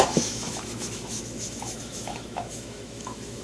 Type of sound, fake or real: fake